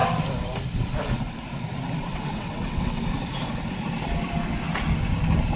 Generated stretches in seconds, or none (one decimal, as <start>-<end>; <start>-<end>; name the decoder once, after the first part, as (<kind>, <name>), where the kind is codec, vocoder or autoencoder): 2.1-3.0 (vocoder, WaveNeXt)

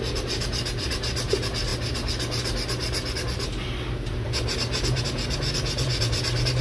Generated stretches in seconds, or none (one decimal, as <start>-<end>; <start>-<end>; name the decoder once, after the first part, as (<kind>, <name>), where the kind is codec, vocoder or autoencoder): none